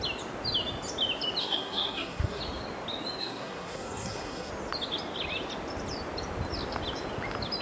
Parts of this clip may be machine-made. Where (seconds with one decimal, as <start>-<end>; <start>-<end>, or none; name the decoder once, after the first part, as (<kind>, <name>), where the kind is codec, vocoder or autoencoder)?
1.4-2.4 (codec, SNAC); 3.2-4.5